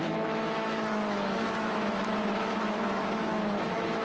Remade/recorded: remade